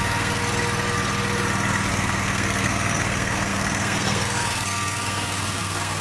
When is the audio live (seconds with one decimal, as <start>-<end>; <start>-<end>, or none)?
0.4-1.9